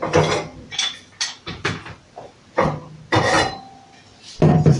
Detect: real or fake real